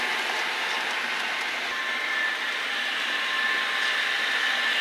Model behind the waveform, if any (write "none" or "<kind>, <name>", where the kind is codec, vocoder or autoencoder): none